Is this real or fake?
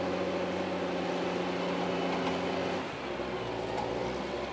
real